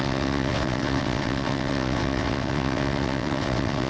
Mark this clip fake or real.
fake